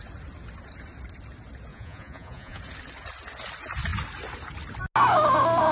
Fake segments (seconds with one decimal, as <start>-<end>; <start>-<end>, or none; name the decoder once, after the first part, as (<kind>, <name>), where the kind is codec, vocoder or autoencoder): 1.7-2.6 (vocoder, Vocos)